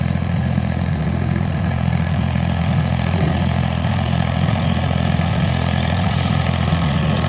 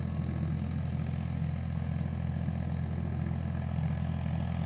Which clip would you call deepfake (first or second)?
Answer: first